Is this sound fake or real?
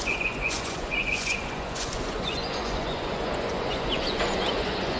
fake